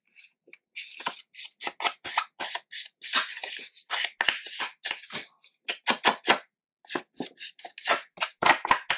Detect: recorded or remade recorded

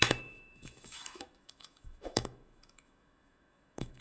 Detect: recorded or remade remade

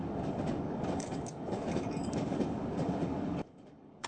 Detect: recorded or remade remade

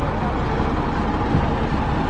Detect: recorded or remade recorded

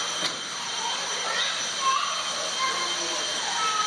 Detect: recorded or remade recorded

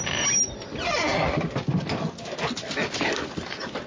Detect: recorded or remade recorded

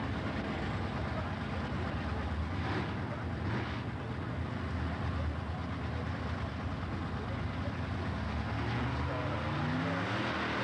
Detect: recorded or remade recorded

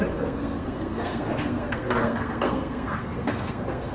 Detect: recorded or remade remade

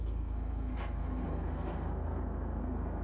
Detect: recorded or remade remade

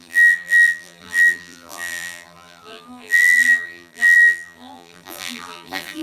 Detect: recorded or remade remade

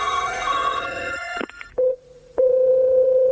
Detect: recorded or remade remade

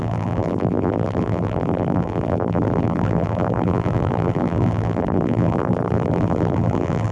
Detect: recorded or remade remade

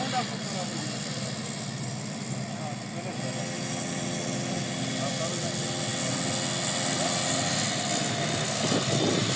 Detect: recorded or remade recorded